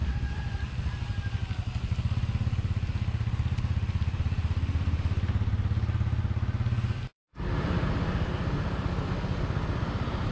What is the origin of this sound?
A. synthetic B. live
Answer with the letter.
B